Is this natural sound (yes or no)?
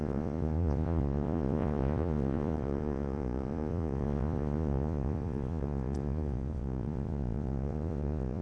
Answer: no